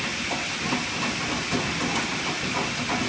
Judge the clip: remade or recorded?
recorded